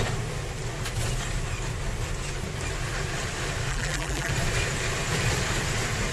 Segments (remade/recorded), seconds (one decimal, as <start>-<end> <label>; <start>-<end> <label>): 0.0-3.7 recorded; 3.7-4.3 remade; 4.3-6.1 recorded